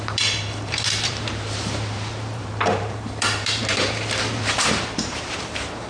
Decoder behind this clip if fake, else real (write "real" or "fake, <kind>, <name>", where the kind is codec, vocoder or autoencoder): fake, vocoder, BigVGAN v2